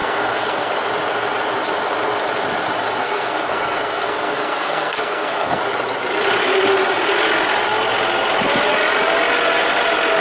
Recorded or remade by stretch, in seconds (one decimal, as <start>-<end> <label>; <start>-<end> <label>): 0.0-0.7 remade; 0.7-3.0 recorded; 3.0-5.6 remade; 5.6-10.2 recorded